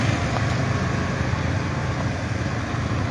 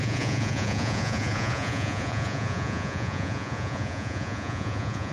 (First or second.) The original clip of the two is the first